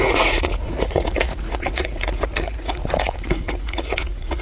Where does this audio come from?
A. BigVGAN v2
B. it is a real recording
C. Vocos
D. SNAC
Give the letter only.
C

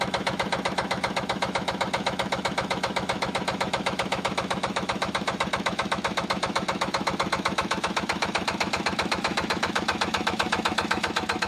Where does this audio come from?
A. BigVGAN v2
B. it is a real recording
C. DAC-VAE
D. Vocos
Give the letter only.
C